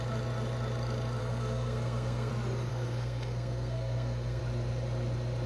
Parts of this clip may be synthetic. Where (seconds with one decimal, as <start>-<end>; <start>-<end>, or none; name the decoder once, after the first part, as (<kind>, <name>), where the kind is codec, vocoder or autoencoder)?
1.2-2.3 (codec, SNAC); 2.7-4.4